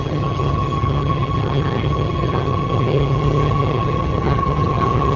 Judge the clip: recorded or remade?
remade